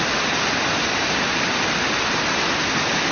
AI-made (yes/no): no